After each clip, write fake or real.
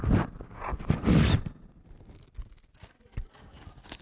real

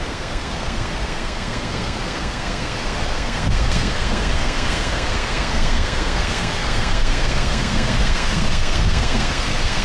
fake